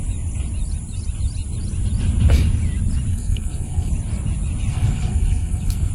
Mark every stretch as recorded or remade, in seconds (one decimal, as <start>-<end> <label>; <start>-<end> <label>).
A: 0.0-3.1 recorded; 3.1-3.9 remade; 3.9-4.7 recorded; 4.7-5.9 remade